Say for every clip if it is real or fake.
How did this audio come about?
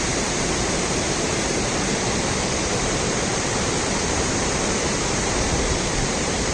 fake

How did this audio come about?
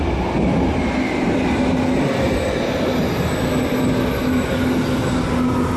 real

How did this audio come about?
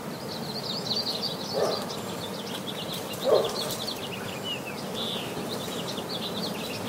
real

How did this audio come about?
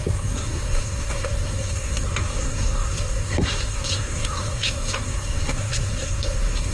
fake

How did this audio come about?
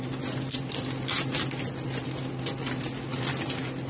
real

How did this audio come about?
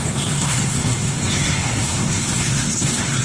fake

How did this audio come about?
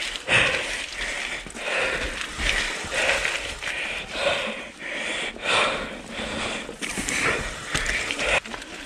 real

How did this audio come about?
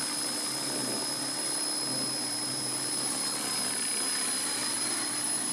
fake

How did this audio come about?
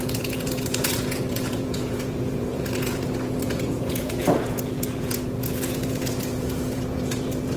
fake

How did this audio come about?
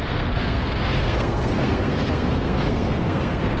fake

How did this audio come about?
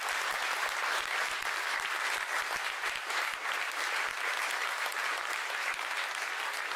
real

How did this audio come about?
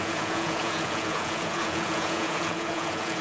fake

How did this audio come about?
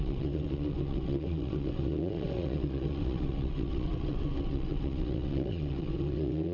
fake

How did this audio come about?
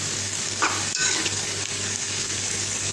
fake